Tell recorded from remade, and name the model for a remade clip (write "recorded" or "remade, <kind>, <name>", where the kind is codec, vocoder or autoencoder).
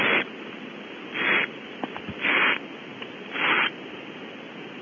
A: recorded